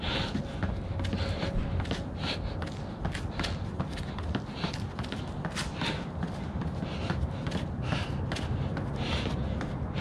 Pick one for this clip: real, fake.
real